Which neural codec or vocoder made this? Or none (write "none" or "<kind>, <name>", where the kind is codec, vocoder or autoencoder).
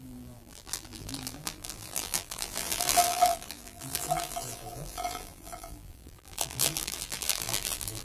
vocoder, BigVGAN v2